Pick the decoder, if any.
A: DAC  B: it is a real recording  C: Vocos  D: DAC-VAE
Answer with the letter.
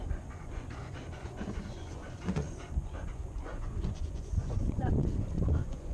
C